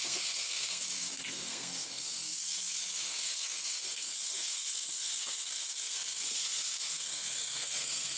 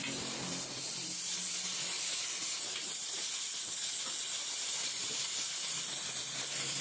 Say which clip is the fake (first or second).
first